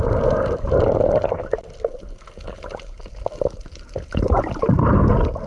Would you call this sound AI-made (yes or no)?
no